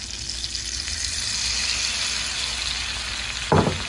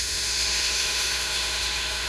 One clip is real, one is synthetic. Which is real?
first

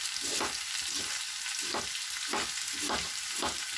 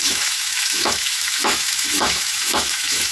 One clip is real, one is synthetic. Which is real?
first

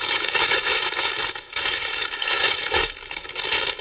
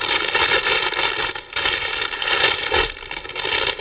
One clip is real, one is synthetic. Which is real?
second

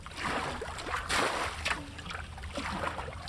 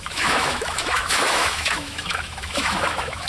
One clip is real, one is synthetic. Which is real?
first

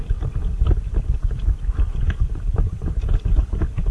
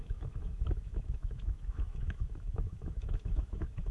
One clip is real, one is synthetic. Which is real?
first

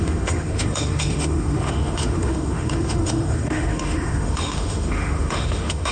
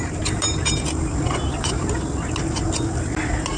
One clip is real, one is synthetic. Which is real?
second